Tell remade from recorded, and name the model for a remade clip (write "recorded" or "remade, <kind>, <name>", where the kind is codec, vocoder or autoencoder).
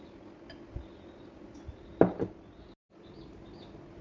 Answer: recorded